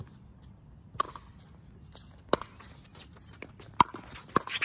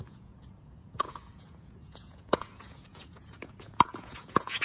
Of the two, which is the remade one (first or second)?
second